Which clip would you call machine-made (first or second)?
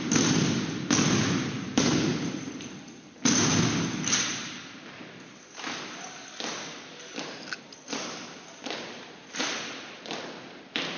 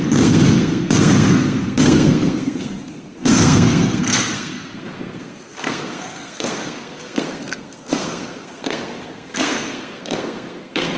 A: second